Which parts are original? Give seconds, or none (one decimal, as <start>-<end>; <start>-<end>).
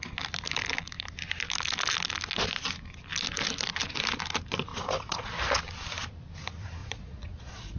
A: 0.0-4.7; 5.3-6.8